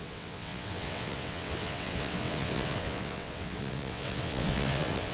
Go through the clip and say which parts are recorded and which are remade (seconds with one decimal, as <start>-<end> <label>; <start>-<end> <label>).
0.0-5.1 remade